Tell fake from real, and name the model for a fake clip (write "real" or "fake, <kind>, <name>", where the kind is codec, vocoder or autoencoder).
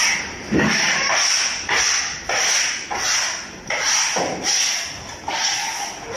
real